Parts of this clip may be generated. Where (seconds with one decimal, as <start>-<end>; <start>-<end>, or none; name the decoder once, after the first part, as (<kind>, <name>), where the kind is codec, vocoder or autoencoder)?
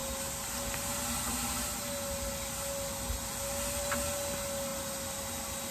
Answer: none